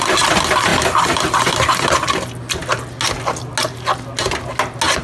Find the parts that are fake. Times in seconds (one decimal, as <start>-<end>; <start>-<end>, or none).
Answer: none